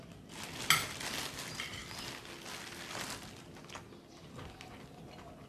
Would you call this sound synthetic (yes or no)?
no